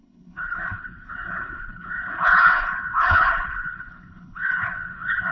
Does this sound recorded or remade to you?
remade